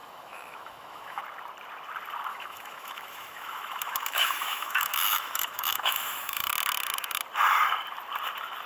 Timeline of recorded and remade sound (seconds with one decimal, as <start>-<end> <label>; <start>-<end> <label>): 0.0-1.2 remade; 1.2-2.3 recorded; 2.3-6.5 remade; 6.5-8.7 recorded